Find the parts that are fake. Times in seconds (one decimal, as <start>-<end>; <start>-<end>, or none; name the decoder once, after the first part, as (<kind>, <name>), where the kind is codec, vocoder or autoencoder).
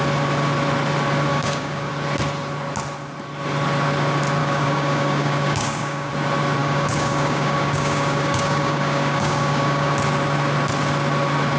1.3-1.9 (codec, DAC); 4.4-6.1; 6.6-9.9